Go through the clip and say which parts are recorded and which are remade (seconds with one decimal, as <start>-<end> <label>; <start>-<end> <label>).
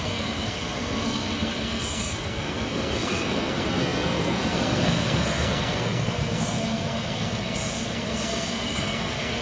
0.0-9.4 remade